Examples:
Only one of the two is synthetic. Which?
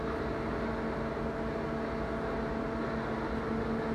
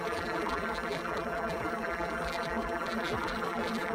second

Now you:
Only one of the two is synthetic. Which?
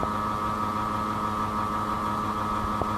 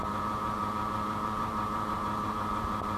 second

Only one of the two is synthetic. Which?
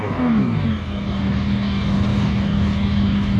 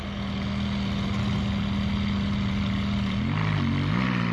first